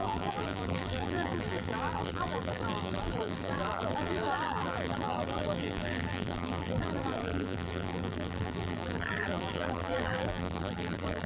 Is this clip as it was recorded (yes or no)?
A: no